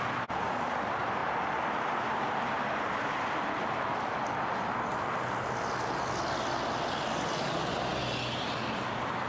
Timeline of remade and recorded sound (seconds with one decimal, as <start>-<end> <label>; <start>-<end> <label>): 0.0-9.3 recorded